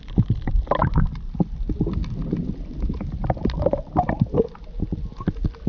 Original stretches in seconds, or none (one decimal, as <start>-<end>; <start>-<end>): 0.0-5.7